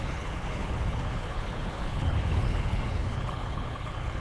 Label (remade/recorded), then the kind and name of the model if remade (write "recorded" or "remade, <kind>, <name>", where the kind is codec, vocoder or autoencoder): remade, codec, HILCodec